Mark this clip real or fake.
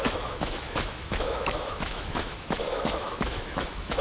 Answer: fake